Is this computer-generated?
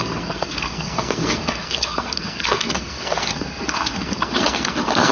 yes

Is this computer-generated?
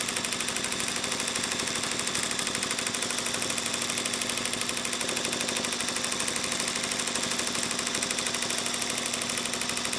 no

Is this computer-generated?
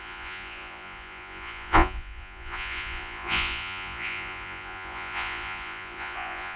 yes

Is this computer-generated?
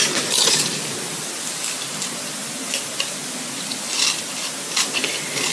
yes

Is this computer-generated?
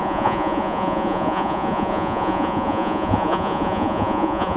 yes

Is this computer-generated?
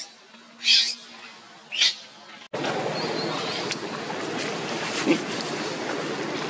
no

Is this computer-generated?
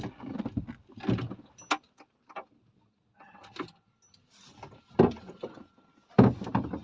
no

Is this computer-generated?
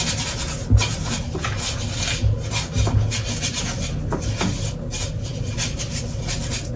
no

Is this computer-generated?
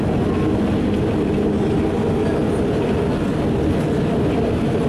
no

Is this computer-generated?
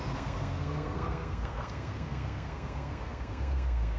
yes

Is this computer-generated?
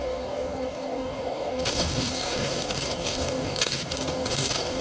yes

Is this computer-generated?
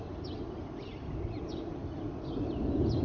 no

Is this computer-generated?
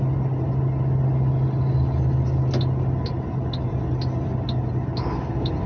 no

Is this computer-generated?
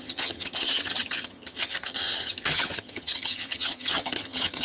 yes